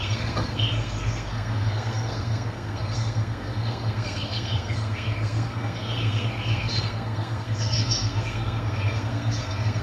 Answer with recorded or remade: remade